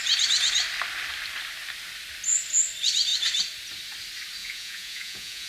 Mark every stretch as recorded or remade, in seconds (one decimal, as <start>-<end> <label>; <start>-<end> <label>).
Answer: 0.0-4.4 recorded; 4.4-5.5 remade